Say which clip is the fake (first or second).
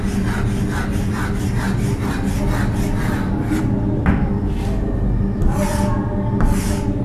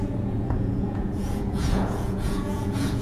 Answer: second